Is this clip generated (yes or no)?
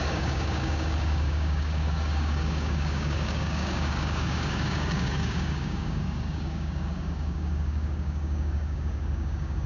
yes